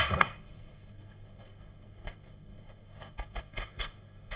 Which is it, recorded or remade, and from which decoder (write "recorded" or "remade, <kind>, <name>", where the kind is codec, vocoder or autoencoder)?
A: remade, codec, SNAC